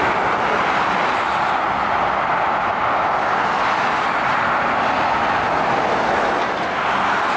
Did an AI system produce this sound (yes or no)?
no